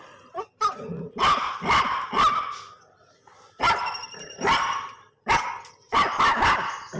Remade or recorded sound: recorded